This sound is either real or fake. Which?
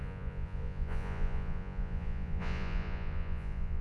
fake